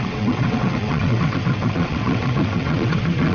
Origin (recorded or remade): remade